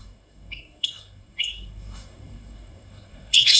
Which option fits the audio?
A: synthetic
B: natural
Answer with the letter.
A